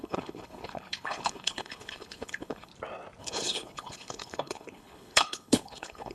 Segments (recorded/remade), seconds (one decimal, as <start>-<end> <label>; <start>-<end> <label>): 0.0-2.7 remade; 2.7-3.2 recorded; 3.2-6.1 remade